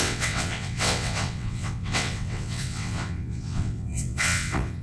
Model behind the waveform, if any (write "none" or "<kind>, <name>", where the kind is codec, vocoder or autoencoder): vocoder, WaveNeXt